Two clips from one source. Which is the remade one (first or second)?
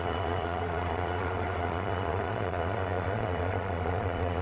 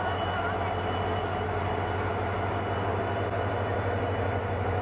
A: first